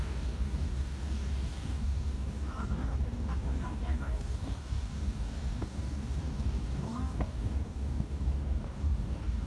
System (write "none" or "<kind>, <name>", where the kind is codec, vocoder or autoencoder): codec, DAC